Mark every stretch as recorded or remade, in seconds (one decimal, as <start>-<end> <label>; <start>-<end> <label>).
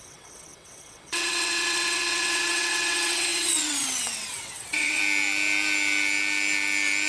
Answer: 0.0-5.0 remade; 5.0-7.1 recorded